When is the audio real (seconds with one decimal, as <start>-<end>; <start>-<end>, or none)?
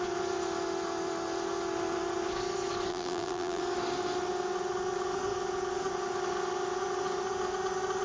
0.0-2.9; 3.6-8.0